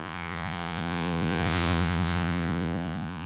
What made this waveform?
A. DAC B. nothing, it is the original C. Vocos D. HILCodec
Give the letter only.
C